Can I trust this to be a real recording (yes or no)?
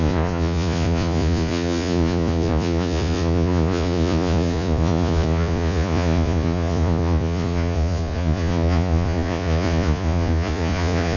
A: no